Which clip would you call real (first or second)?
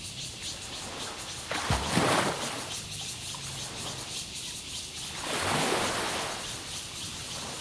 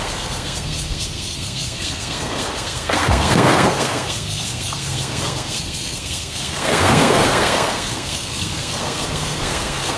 first